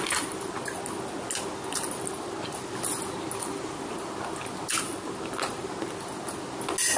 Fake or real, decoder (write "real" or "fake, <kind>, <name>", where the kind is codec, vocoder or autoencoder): real